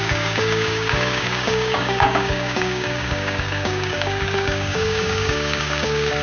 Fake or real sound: fake